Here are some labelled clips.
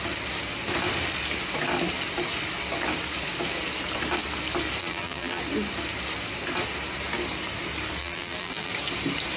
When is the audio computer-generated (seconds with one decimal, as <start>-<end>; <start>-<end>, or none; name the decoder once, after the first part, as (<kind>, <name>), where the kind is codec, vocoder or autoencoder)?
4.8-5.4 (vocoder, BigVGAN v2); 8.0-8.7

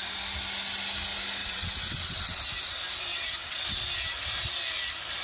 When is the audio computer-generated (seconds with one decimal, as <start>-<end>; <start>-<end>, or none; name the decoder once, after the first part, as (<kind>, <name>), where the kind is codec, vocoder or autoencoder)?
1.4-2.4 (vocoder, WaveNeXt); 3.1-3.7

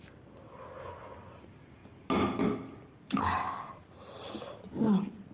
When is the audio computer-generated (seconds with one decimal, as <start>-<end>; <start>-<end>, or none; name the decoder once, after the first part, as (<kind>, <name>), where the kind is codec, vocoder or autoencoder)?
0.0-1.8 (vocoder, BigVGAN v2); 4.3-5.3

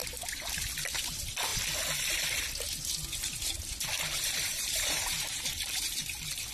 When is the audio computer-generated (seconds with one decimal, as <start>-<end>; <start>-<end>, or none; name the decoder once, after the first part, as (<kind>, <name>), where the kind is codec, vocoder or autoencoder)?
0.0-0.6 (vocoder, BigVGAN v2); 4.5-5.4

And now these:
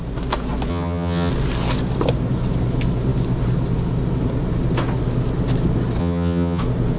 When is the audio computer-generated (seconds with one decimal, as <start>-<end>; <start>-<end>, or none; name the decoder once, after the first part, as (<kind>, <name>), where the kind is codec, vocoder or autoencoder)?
0.7-1.3 (vocoder, HiFi-GAN); 6.0-6.6